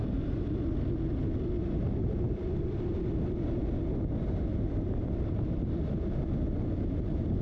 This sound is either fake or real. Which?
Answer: real